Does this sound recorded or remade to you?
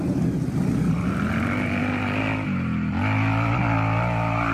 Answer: recorded